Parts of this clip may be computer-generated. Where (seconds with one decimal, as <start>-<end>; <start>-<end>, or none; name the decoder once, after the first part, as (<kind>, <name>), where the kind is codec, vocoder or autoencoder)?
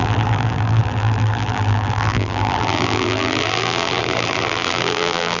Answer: 0.0-5.4 (vocoder, BigVGAN v2)